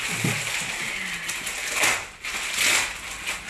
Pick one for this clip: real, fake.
real